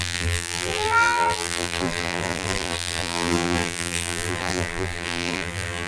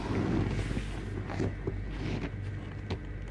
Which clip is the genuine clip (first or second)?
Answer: second